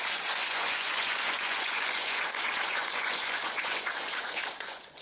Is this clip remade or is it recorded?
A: remade